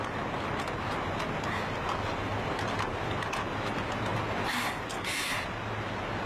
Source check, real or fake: real